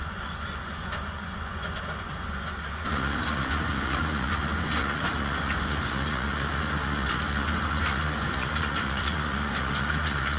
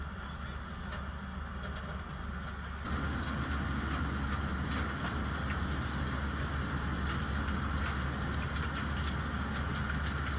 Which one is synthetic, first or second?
first